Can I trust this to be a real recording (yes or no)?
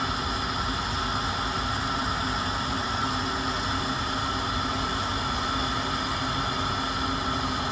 yes